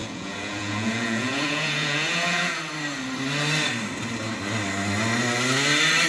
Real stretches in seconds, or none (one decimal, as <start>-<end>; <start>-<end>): 2.6-6.1